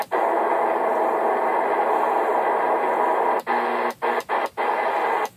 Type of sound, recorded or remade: recorded